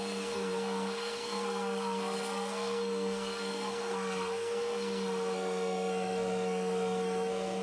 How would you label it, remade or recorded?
remade